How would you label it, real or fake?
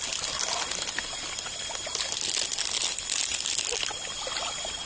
real